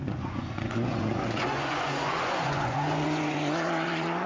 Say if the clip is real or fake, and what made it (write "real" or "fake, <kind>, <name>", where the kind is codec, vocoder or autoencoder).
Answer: fake, vocoder, Vocos